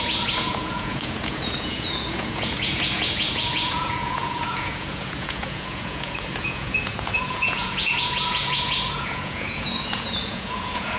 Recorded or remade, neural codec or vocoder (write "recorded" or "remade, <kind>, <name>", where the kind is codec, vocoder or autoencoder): remade, vocoder, Vocos